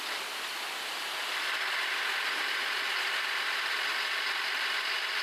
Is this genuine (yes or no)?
no